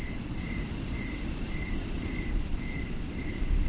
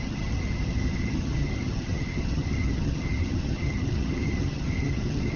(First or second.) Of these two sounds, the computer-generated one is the second